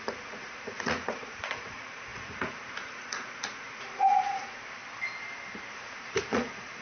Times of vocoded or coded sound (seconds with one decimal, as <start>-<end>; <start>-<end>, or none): 0.0-4.8; 5.7-6.8